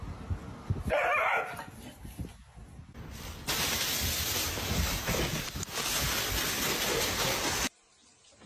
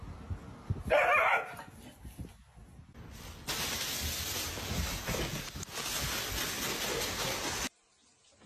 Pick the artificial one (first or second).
first